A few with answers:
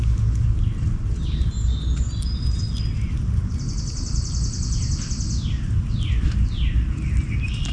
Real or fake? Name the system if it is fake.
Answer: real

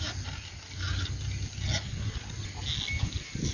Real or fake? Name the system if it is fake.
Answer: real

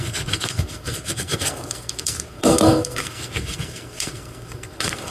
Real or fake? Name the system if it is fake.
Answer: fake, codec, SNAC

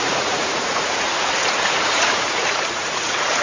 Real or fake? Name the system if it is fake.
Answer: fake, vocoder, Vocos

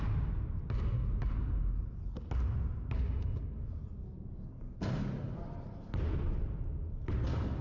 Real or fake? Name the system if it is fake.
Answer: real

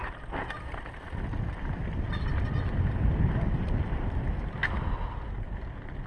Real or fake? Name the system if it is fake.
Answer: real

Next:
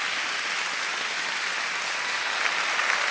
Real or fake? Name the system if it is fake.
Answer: real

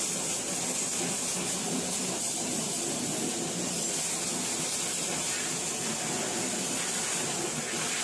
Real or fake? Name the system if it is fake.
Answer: real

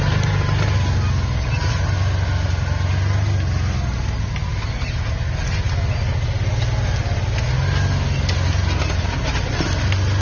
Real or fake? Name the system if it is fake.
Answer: real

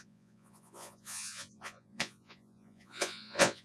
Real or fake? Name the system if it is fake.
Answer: fake, vocoder, Vocos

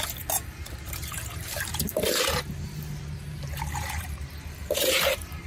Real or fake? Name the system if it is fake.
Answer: fake, vocoder, BigVGAN v2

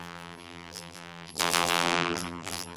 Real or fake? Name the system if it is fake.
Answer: fake, vocoder, BigVGAN v2